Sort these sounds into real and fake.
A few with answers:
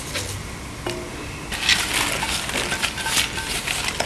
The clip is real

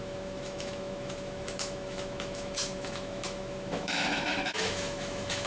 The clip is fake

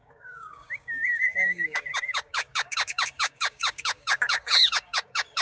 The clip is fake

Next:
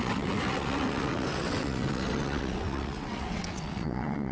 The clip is fake